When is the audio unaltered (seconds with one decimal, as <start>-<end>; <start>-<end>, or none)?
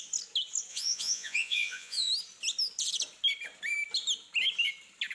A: 0.0-0.7; 2.1-5.1